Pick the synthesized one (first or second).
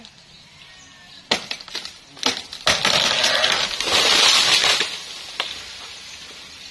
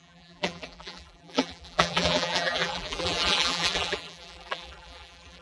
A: second